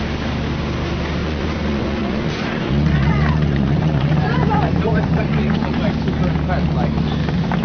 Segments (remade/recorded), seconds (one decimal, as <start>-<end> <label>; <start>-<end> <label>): 0.0-1.2 recorded; 1.2-5.8 remade; 5.8-7.6 recorded